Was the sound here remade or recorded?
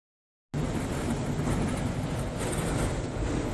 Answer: recorded